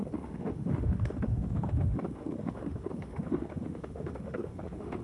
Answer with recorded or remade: remade